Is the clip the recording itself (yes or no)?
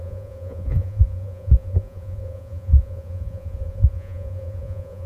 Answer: no